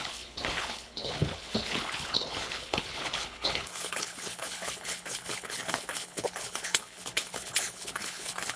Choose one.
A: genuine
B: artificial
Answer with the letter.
B